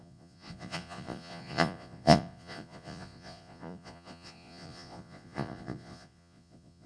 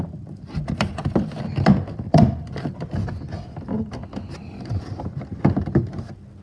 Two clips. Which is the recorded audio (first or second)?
second